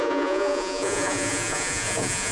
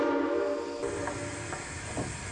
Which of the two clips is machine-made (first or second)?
first